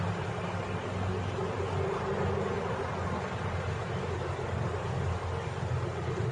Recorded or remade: recorded